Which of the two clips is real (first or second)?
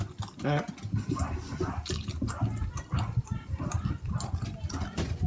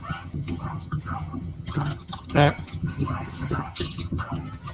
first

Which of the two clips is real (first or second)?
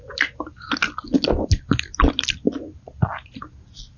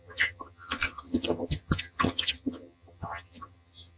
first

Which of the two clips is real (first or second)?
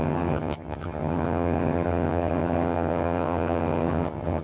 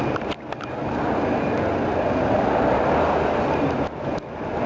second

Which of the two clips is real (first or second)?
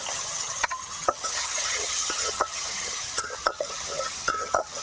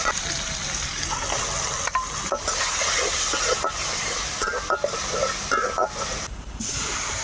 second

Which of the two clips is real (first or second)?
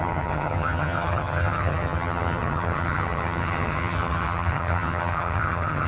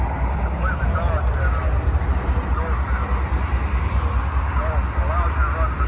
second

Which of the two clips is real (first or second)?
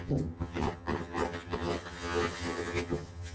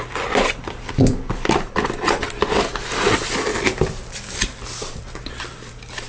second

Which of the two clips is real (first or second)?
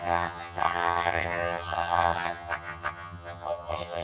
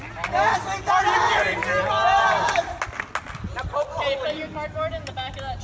second